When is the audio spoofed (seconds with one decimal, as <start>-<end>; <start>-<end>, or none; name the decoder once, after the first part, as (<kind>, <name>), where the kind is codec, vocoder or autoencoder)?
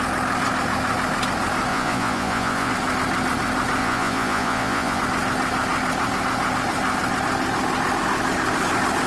1.7-2.7 (vocoder, Vocos); 3.8-5.0